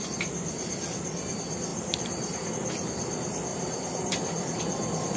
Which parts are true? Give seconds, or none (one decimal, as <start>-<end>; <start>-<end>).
0.0-1.7; 2.5-3.5; 4.1-5.2